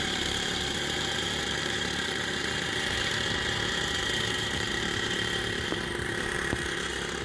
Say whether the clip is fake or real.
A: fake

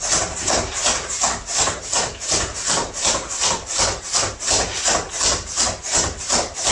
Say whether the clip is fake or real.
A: real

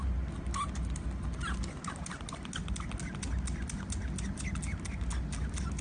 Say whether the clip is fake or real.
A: real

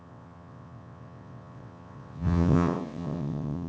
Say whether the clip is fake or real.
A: fake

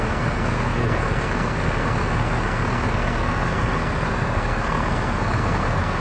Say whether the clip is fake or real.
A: fake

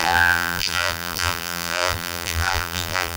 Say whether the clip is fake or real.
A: fake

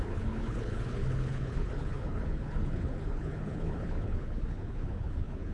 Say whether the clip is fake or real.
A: fake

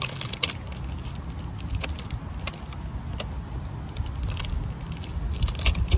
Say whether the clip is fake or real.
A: real